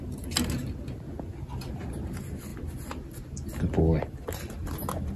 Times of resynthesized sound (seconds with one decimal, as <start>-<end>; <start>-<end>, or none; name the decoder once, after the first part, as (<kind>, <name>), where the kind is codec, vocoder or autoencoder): none